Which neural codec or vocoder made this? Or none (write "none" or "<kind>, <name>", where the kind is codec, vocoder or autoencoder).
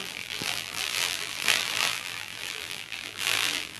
vocoder, BigVGAN v2